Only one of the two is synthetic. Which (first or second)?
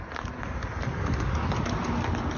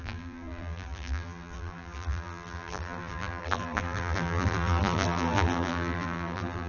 second